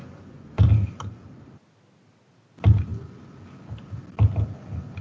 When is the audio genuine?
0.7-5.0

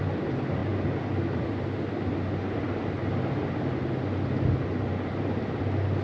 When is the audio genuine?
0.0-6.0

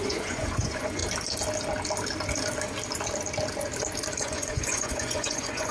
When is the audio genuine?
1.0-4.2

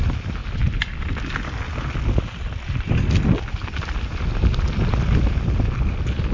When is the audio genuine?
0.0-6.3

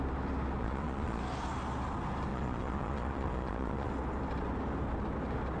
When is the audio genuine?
0.0-0.6; 1.2-2.3; 3.9-5.6

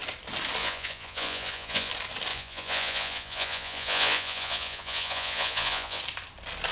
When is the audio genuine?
0.0-0.6; 1.9-2.3; 6.0-6.7

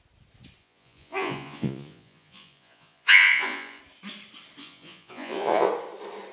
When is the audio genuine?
0.0-0.6; 3.8-4.6; 5.7-6.3